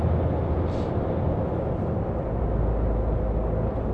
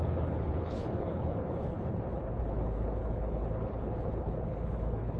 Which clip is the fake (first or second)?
second